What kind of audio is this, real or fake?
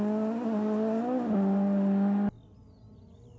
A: real